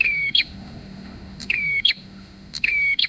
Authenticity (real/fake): fake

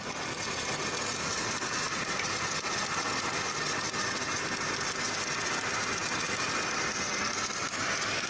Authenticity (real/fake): real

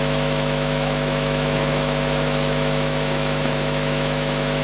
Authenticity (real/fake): fake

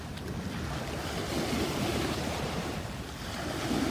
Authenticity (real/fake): real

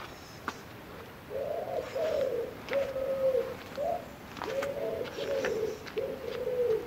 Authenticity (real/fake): real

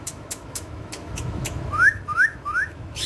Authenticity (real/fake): fake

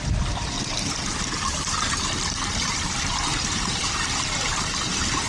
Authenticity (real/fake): real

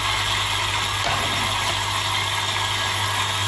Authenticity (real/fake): real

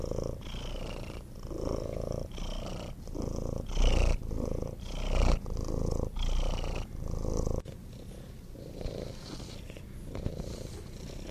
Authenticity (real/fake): real